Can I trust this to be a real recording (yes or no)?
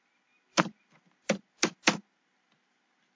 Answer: yes